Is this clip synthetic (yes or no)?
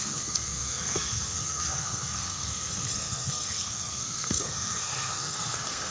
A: yes